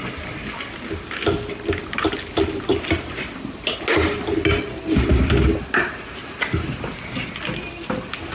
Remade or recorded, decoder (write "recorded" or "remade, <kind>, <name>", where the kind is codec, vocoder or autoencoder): recorded